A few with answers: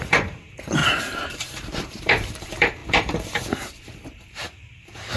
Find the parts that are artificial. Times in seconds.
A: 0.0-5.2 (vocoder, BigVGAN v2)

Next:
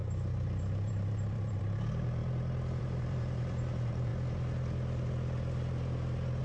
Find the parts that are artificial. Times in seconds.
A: 0.0-2.2 (vocoder, BigVGAN v2); 2.8-4.1

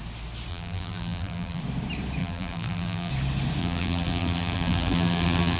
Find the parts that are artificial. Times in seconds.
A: 0.5-1.6 (vocoder, BigVGAN v2); 2.2-3.1; 3.6-5.6

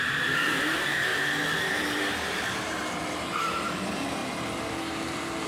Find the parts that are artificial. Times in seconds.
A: 0.0-1.1 (vocoder, BigVGAN v2); 1.7-5.5

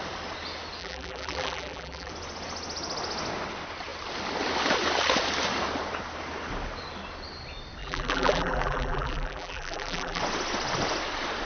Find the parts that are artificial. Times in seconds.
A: 0.8-2.1 (vocoder, BigVGAN v2); 7.8-10.2